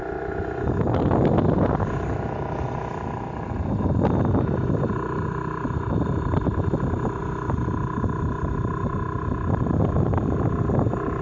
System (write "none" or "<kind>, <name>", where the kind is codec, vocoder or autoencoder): none